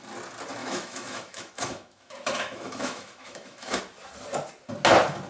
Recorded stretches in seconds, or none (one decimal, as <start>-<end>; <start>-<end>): 0.0-0.6; 3.8-5.3

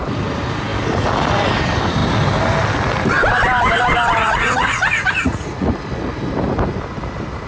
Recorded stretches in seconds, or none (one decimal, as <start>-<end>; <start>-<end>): 0.0-4.2; 5.7-7.5

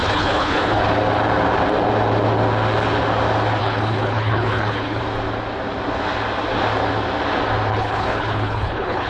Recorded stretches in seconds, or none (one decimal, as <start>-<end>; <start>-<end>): 0.8-3.6; 5.0-7.7

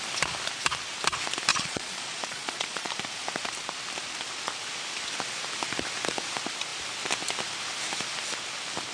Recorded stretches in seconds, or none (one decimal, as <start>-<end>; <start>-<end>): 0.0-1.5; 2.9-8.9

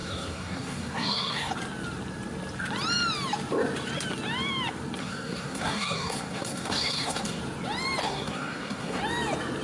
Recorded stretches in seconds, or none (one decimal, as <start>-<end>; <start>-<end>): 1.5-5.0; 7.4-8.0; 9.0-9.6